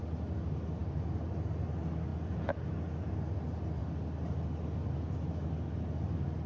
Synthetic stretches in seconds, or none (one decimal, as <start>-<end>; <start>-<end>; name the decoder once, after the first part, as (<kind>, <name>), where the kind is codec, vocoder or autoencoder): 2.1-3.1 (vocoder, Vocos)